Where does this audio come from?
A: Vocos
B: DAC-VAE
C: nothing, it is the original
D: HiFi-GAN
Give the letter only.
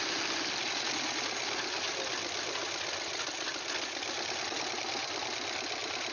C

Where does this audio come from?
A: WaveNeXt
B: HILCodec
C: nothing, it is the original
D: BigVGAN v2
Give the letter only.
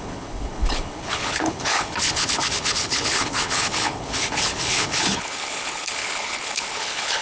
B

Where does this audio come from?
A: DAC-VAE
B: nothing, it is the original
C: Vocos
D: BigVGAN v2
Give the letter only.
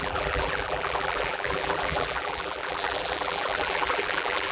D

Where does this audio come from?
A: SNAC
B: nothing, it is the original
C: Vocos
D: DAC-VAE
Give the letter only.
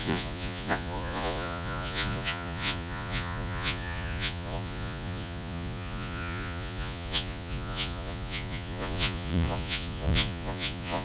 C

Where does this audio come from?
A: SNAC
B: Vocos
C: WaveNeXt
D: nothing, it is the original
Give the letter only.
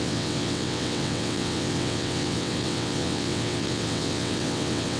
C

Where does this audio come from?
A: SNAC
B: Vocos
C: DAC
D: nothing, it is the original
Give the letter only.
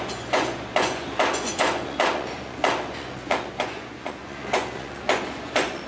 B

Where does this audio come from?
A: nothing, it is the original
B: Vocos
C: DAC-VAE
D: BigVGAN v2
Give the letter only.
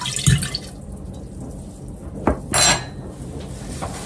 A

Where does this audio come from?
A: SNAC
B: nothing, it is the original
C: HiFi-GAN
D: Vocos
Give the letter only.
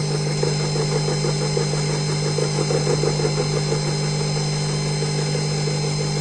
B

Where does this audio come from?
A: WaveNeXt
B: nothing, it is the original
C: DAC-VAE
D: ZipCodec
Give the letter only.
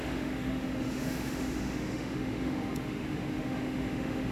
C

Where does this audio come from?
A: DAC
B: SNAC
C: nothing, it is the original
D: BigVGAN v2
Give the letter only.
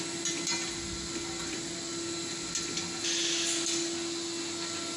C